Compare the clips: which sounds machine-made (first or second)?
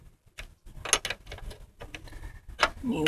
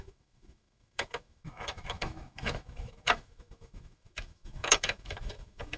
second